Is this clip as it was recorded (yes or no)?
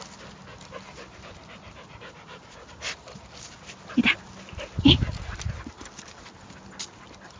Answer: yes